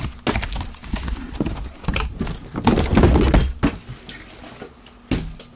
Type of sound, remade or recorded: recorded